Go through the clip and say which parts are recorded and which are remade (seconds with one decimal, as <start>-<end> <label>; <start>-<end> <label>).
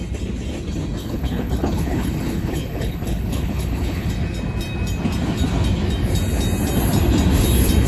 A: 0.0-1.0 recorded; 1.0-4.1 remade; 4.1-7.9 recorded